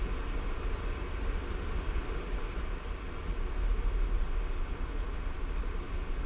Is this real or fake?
real